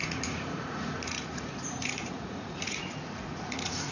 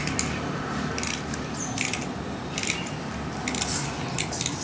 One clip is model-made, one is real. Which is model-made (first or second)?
first